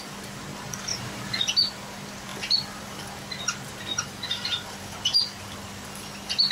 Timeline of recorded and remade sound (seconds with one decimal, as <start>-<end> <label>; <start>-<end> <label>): 0.0-3.9 recorded; 3.9-4.8 remade; 4.8-6.5 recorded